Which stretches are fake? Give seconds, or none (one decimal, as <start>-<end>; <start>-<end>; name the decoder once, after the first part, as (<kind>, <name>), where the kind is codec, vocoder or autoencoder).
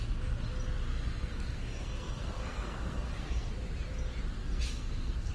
0.9-3.5 (codec, SNAC); 4.4-5.3